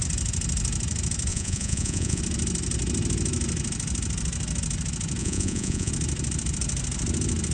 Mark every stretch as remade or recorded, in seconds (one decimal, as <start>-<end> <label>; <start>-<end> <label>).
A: 0.0-1.3 recorded; 1.3-2.2 remade; 2.2-5.2 recorded; 5.2-5.9 remade; 5.9-7.5 recorded